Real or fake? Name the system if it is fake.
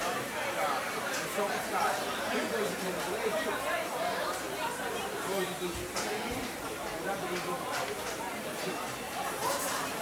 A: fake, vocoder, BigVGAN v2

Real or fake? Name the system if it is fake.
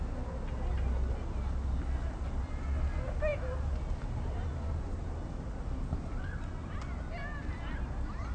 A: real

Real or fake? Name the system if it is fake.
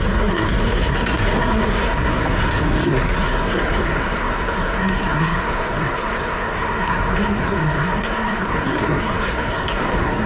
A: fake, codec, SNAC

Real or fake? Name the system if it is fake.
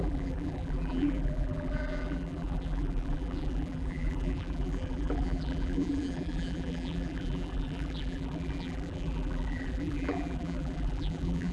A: fake, vocoder, BigVGAN v2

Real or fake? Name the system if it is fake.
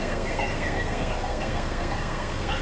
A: fake, codec, SNAC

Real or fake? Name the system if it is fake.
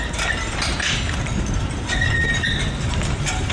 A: real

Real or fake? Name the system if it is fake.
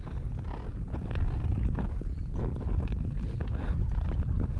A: real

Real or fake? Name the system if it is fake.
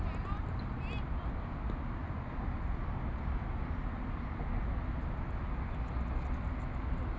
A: real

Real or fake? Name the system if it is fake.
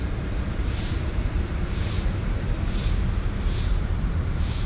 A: fake, vocoder, BigVGAN v2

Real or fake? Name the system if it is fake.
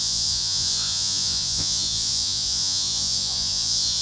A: fake, vocoder, Vocos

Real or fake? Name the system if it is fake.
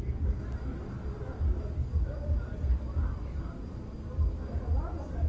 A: real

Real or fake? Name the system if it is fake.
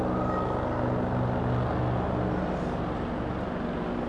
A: real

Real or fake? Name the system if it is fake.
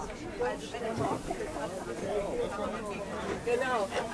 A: real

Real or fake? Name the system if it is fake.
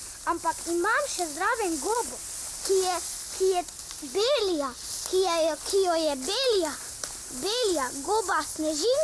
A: real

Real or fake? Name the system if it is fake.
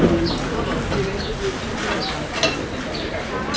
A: real